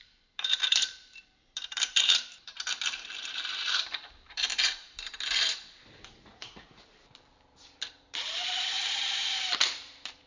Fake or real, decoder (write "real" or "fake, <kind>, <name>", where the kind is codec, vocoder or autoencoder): fake, vocoder, BigVGAN v2